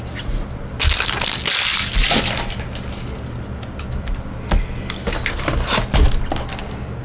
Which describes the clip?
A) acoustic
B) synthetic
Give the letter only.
A